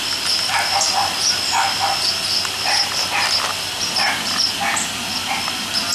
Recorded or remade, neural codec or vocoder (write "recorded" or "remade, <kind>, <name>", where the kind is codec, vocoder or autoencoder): recorded